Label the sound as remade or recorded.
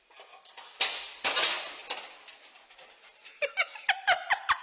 recorded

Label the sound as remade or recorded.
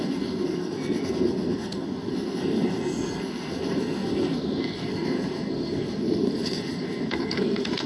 remade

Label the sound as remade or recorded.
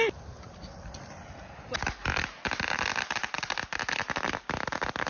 recorded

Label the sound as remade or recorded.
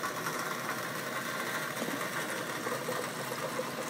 recorded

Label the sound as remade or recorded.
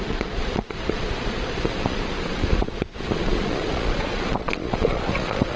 remade